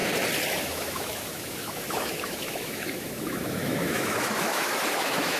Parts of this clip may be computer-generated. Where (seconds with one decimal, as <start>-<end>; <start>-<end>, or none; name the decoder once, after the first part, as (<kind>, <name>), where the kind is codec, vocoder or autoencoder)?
0.6-5.4 (autoencoder, DAC-VAE)